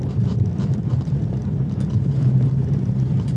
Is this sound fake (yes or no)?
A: yes